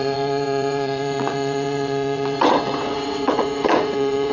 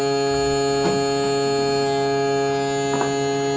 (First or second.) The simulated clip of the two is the first